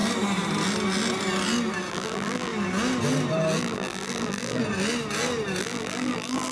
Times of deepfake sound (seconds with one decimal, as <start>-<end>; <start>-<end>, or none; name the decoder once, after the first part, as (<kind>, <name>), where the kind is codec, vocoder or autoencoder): 1.9-2.5 (vocoder, BigVGAN v2); 3.6-4.6; 5.6-6.5